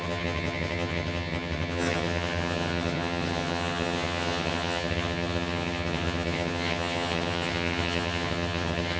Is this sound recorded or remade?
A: remade